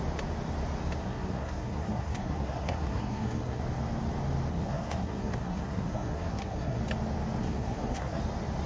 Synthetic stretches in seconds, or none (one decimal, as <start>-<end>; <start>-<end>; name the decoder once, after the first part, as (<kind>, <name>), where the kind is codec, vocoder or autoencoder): 1.0-3.6 (codec, SNAC); 4.5-6.8; 7.4-8.2